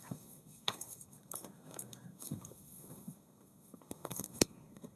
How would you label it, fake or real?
fake